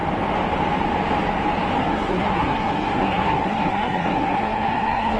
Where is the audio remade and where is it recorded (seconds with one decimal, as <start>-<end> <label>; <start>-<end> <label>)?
0.0-1.8 recorded; 1.8-5.2 remade